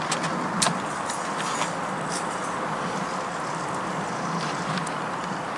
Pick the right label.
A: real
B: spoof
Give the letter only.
A